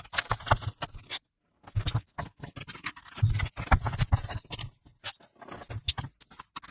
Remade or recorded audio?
recorded